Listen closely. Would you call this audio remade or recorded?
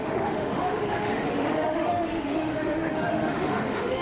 remade